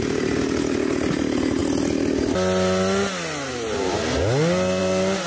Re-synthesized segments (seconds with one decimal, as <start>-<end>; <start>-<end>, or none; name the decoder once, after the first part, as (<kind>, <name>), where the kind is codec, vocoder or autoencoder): none